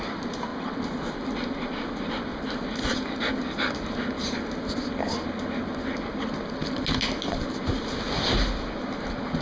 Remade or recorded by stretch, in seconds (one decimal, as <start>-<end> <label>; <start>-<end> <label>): 0.0-0.5 recorded; 0.5-2.1 remade; 2.1-9.4 recorded